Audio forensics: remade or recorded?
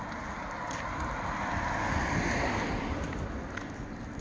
recorded